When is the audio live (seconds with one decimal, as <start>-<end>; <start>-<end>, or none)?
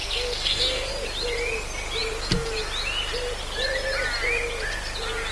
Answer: 0.9-5.3